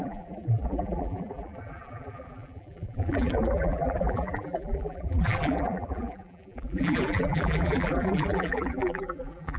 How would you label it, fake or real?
fake